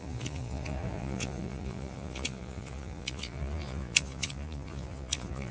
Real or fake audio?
fake